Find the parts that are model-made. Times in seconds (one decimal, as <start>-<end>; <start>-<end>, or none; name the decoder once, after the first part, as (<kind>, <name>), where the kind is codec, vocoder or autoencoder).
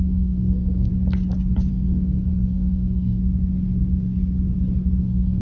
0.0-0.9 (codec, SNAC); 1.7-3.2; 5.0-5.4